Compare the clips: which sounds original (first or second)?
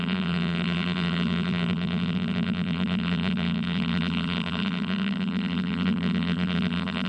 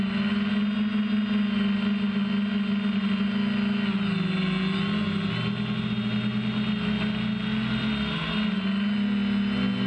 second